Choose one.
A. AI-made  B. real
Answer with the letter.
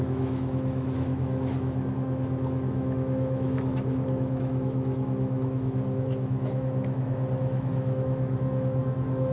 A